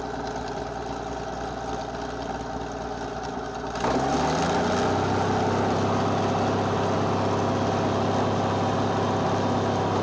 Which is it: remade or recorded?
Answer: recorded